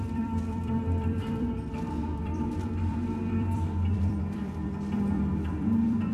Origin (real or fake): fake